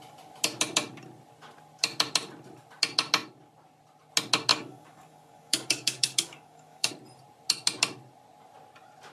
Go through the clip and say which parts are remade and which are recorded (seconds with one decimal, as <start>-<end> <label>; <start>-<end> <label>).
0.0-4.5 recorded; 4.5-6.9 remade; 6.9-9.1 recorded